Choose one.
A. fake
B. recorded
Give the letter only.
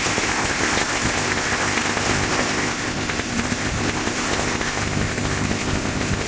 A